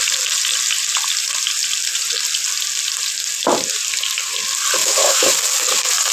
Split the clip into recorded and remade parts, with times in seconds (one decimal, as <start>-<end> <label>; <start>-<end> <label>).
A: 0.0-4.8 recorded; 4.8-5.3 remade; 5.3-6.1 recorded